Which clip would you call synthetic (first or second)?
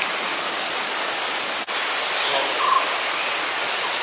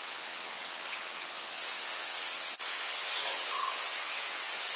second